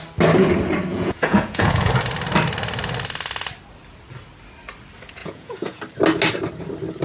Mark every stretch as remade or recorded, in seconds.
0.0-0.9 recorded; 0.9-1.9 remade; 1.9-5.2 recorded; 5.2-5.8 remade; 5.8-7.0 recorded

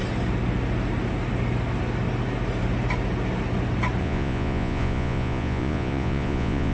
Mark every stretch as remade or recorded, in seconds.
0.0-4.0 recorded; 4.0-6.7 remade

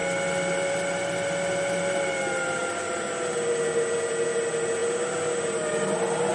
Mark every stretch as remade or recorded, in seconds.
0.0-6.3 recorded

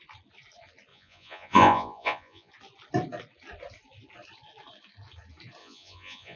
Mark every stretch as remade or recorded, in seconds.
0.0-0.9 recorded; 0.9-2.5 remade; 2.5-5.6 recorded; 5.6-6.4 remade

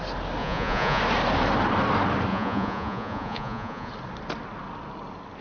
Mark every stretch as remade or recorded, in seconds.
0.0-0.4 recorded; 0.4-1.0 remade; 1.0-2.3 recorded; 2.3-3.9 remade; 3.9-5.4 recorded

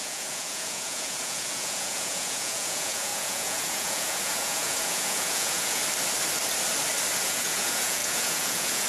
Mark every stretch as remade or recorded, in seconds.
0.0-5.8 remade; 5.8-7.2 recorded; 7.2-8.9 remade

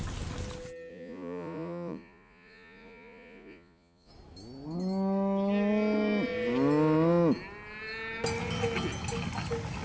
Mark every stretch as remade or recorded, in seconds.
0.0-0.9 recorded; 0.9-4.1 remade; 4.1-9.8 recorded

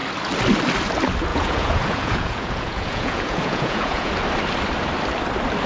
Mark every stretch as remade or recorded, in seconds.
0.0-1.3 recorded; 1.3-4.1 remade; 4.1-5.7 recorded